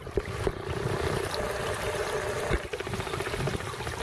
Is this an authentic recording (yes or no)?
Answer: yes